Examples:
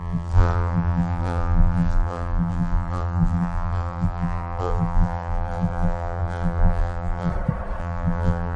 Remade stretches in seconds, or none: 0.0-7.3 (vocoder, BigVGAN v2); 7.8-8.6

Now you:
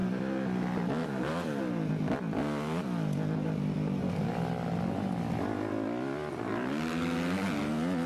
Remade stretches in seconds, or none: none

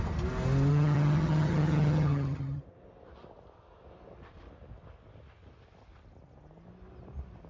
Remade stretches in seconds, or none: 0.7-2.6 (vocoder, HiFi-GAN)

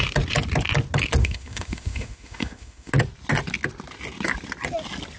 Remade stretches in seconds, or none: 1.2-2.9 (autoencoder, DAC-VAE)

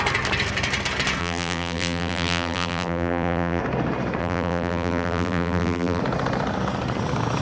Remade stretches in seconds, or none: 1.2-3.6 (vocoder, BigVGAN v2); 4.2-6.0

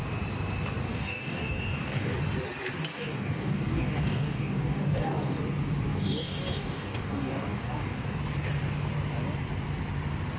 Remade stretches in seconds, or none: 0.9-2.1 (codec, DAC); 2.9-5.4; 5.9-8.2

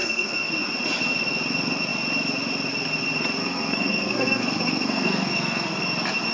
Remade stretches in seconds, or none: 0.0-0.5 (codec, SNAC); 3.4-5.8

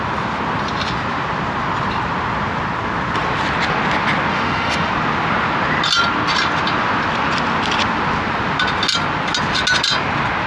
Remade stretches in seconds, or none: 4.3-4.9 (autoencoder, DAC-VAE)